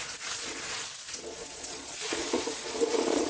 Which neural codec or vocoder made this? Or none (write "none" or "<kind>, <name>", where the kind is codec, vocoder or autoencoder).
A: vocoder, Vocos